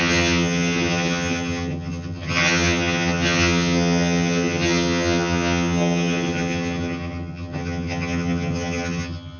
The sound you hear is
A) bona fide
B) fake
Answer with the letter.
B